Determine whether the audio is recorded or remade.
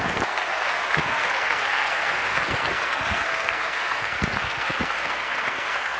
remade